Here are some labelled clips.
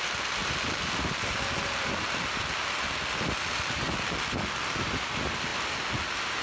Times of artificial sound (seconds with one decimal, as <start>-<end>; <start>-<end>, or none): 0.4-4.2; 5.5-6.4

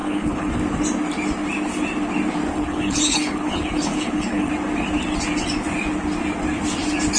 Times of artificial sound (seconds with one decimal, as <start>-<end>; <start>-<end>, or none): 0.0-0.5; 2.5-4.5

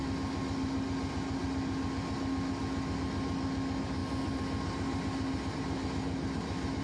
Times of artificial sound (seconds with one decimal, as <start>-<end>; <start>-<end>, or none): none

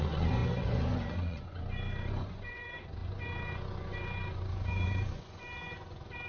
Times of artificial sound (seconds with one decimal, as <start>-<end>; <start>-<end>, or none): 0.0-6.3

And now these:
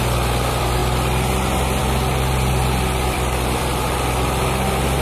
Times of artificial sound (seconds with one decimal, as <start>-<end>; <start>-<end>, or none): 0.0-0.8; 1.8-5.0

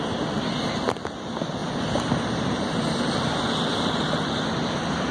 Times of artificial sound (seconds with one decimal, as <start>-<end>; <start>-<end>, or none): 1.6-3.5

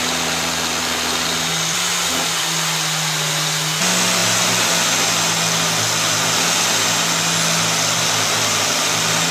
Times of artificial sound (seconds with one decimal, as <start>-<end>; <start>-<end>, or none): none